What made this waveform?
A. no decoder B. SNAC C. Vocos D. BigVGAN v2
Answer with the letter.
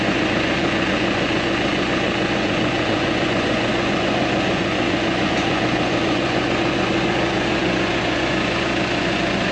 C